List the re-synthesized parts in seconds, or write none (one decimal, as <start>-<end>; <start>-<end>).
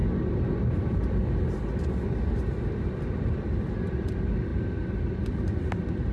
none